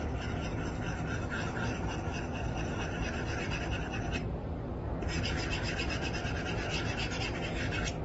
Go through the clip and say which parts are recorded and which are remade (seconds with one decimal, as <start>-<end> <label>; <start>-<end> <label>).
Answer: 0.0-1.1 recorded; 1.1-2.0 remade; 2.0-2.4 recorded; 2.4-4.5 remade; 4.5-8.0 recorded